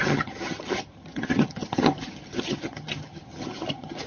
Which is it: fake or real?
fake